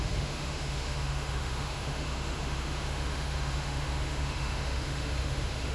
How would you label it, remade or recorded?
remade